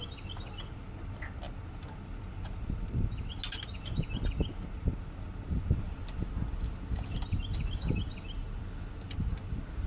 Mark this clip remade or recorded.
recorded